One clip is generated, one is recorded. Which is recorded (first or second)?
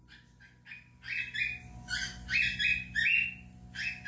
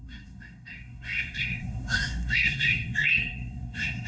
first